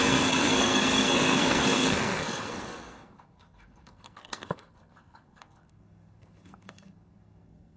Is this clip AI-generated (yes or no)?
yes